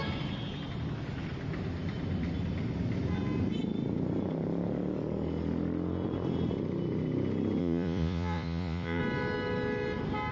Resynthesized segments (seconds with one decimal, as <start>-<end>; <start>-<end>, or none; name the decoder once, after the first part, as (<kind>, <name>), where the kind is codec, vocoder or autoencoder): 7.6-9.0 (vocoder, Vocos)